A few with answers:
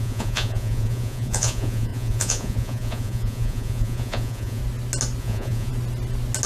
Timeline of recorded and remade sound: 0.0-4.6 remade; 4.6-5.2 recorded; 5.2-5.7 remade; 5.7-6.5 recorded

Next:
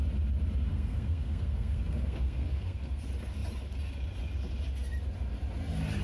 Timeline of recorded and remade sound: 0.0-0.7 recorded; 0.7-3.0 remade; 3.0-6.0 recorded